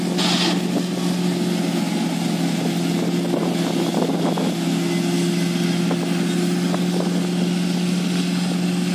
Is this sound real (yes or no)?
yes